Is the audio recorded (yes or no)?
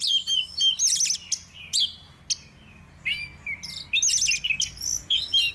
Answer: yes